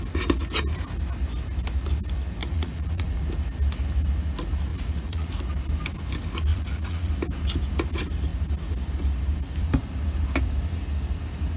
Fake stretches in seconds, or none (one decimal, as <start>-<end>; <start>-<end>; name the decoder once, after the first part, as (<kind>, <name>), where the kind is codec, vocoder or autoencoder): 2.4-3.2 (vocoder, Vocos); 4.7-5.3; 6.5-7.1